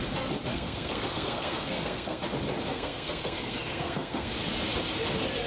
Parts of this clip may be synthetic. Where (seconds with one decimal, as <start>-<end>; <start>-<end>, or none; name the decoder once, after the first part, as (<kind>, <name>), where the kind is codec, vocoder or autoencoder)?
0.5-2.2 (codec, SNAC); 2.7-4.3